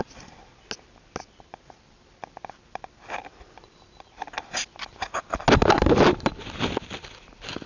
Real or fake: real